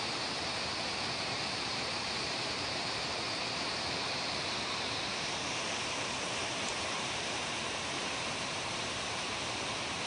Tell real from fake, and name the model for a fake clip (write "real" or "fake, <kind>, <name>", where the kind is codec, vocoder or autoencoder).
fake, vocoder, BigVGAN v2